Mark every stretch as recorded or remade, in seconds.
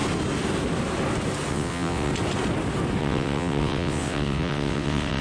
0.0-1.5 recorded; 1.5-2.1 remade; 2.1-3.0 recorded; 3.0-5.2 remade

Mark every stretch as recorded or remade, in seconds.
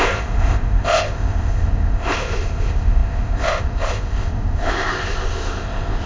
0.0-6.1 remade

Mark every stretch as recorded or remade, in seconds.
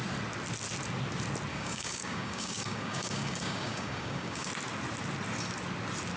0.0-1.5 recorded; 1.5-4.5 remade; 4.5-6.2 recorded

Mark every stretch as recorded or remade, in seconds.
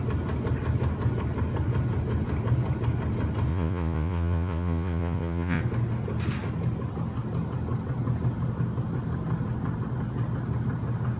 0.0-3.5 recorded; 3.5-5.6 remade; 5.6-11.2 recorded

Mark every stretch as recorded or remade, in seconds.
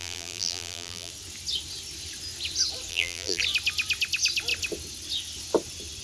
0.0-1.1 remade; 1.1-2.9 recorded; 2.9-3.4 remade; 3.4-6.0 recorded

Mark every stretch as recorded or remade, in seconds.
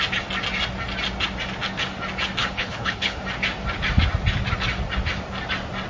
0.0-2.4 recorded; 2.4-3.2 remade; 3.2-5.9 recorded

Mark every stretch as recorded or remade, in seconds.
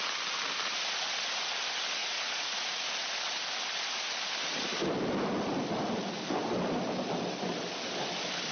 0.0-2.0 recorded; 2.0-2.9 remade; 2.9-8.5 recorded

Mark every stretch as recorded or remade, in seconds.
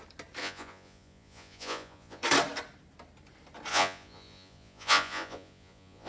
0.0-0.4 recorded; 0.4-2.2 remade; 2.2-3.7 recorded; 3.7-6.1 remade